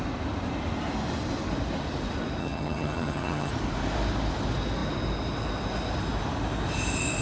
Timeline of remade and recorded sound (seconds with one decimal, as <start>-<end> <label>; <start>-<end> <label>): 0.0-2.4 recorded; 2.4-3.5 remade; 3.5-7.2 recorded